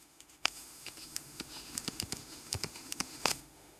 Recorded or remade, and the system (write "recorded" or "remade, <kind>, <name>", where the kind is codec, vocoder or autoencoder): remade, autoencoder, DAC-VAE